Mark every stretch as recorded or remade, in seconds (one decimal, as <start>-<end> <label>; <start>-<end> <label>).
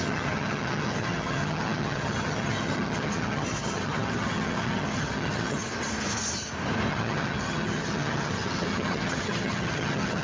0.0-5.6 remade; 5.6-6.9 recorded; 6.9-10.2 remade